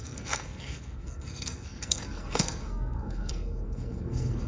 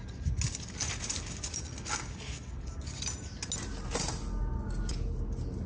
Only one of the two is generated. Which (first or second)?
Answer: first